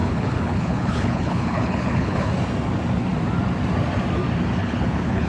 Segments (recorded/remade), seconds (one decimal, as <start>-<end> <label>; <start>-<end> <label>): 0.0-2.3 remade; 2.3-4.6 recorded; 4.6-5.3 remade